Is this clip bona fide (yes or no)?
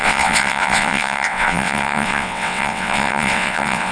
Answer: no